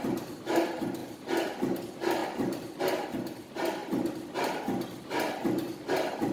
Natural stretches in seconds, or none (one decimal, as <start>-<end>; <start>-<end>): 0.0-6.3